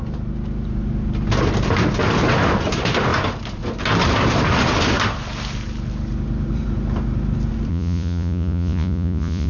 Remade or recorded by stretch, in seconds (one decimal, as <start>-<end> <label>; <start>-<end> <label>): 0.0-7.7 recorded; 7.7-9.5 remade